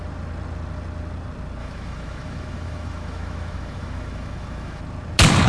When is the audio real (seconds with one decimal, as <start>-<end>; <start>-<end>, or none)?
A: 0.0-1.6; 4.8-5.5